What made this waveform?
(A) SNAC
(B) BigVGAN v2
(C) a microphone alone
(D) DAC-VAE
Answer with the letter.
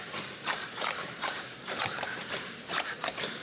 B